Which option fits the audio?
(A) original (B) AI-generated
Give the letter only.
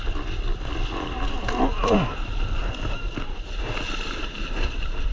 A